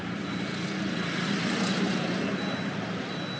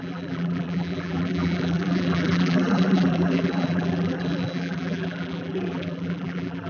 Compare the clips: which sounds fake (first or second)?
second